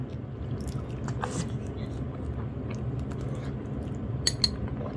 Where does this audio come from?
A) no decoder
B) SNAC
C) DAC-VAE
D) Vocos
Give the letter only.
A